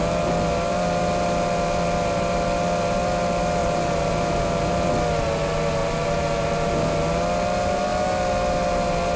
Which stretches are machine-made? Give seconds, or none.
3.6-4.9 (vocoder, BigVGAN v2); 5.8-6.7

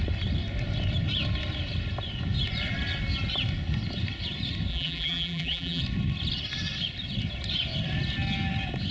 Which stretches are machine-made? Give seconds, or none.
4.7-5.8 (vocoder, BigVGAN v2)

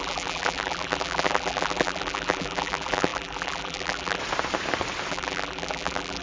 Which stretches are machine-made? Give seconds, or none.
0.0-4.2 (vocoder, BigVGAN v2); 5.1-6.2

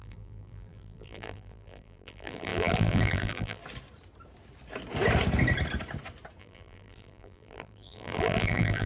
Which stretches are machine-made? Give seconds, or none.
0.0-3.6 (vocoder, BigVGAN v2); 6.4-8.9

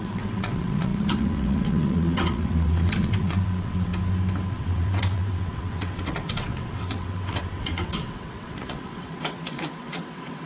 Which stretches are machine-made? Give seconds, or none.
0.0-3.9 (vocoder, WaveNeXt); 4.5-10.5

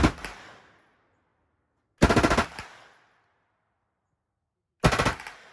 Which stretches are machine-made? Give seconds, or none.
none

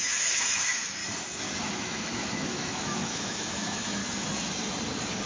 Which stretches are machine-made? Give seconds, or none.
0.0-1.0 (autoencoder, DAC-VAE); 1.6-4.0